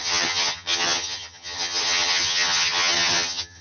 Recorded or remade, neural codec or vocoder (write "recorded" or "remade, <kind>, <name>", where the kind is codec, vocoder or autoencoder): remade, vocoder, HiFi-GAN